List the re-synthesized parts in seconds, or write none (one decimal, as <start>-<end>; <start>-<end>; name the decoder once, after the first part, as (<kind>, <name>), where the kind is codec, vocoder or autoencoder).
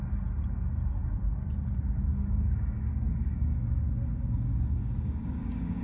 2.1-5.8 (codec, DAC)